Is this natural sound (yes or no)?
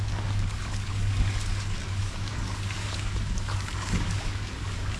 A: no